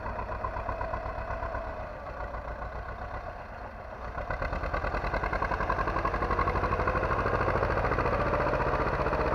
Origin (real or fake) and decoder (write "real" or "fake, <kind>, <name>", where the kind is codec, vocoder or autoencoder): real